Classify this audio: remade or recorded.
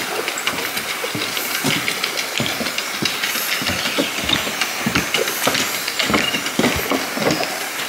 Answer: recorded